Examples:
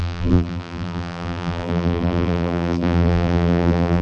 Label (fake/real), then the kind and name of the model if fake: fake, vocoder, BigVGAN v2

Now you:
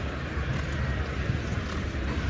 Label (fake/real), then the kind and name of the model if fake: real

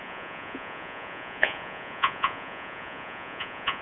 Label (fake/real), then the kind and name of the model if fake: fake, vocoder, Vocos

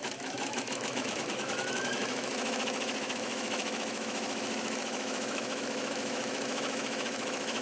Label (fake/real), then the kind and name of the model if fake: fake, autoencoder, DAC-VAE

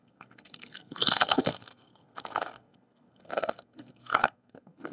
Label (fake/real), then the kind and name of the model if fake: fake, codec, SNAC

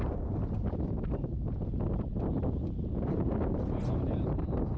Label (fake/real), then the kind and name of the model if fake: real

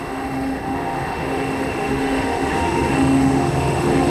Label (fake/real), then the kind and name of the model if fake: fake, autoencoder, DAC-VAE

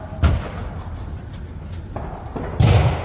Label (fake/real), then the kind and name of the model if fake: real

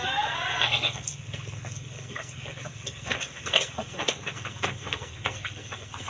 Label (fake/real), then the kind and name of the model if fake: fake, codec, SNAC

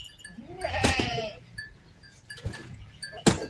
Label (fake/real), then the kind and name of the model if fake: fake, vocoder, Vocos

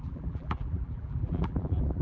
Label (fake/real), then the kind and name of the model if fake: fake, vocoder, BigVGAN v2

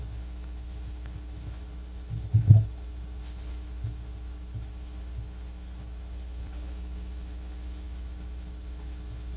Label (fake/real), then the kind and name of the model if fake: fake, codec, HILCodec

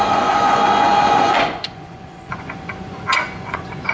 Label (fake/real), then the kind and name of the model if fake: fake, vocoder, Vocos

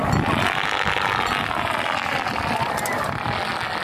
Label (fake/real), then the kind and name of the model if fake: real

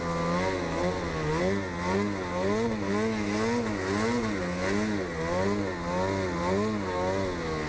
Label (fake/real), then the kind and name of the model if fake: real